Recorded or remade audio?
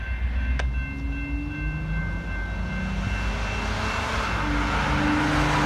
recorded